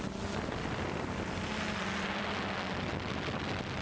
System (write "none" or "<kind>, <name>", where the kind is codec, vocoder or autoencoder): none